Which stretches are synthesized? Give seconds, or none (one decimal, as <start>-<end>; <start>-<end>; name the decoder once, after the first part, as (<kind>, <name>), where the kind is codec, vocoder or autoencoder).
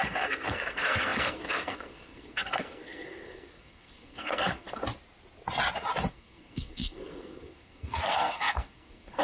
0.0-4.8 (codec, SNAC); 6.1-9.2